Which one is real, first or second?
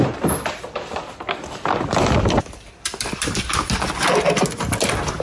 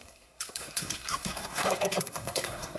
first